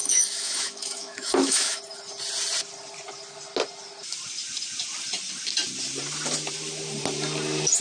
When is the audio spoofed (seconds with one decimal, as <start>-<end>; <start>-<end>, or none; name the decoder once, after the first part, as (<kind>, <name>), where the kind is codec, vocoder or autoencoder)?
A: 0.0-1.8 (autoencoder, DAC-VAE)